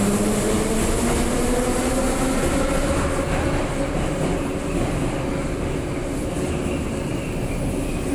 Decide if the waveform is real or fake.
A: real